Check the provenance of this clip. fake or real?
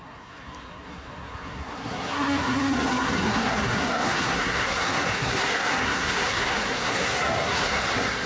fake